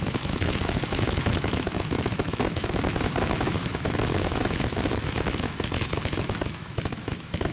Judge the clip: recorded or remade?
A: remade